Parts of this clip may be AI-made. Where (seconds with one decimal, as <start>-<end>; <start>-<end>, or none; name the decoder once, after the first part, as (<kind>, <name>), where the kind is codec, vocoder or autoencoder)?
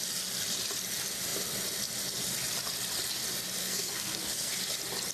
3.6-4.5 (codec, SNAC)